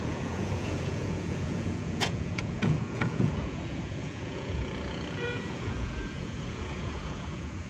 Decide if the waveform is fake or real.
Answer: fake